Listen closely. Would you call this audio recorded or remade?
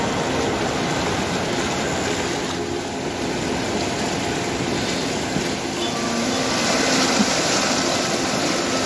recorded